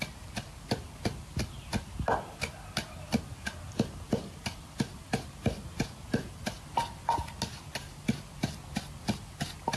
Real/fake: real